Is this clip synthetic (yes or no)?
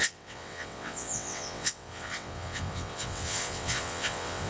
yes